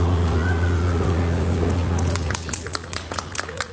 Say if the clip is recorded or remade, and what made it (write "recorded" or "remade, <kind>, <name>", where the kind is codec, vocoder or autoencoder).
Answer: remade, vocoder, Vocos